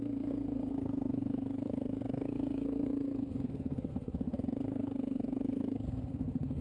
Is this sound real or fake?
fake